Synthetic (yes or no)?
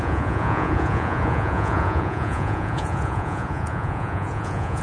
yes